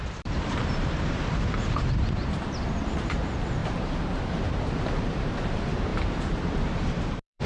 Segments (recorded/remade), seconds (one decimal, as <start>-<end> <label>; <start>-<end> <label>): 0.0-7.5 remade